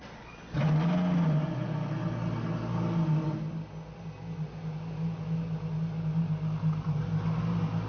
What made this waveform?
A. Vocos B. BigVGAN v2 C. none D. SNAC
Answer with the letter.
C